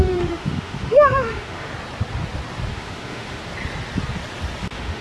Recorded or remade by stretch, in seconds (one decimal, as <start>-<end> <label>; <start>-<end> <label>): 0.0-1.7 remade; 1.7-2.7 recorded; 2.7-3.4 remade; 3.4-4.6 recorded; 4.6-5.0 remade